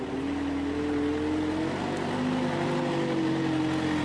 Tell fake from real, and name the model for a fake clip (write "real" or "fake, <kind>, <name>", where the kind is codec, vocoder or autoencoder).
real